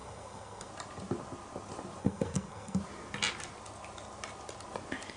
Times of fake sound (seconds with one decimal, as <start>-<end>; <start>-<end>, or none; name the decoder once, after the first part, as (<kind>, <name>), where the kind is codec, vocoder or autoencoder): 0.0-0.7 (codec, SNAC); 2.0-2.8